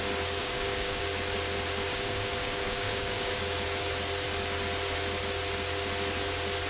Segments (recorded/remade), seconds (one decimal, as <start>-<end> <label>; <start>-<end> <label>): 0.0-0.4 recorded; 0.4-1.0 remade; 1.0-1.9 recorded; 1.9-3.4 remade; 3.4-6.7 recorded